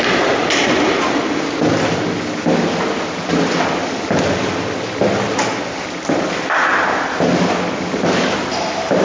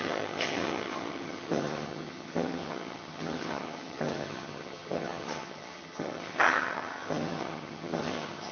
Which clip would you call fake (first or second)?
second